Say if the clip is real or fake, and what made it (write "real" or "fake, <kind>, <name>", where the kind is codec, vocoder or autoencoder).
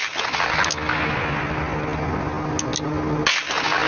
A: real